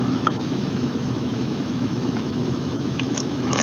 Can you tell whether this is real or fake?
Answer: fake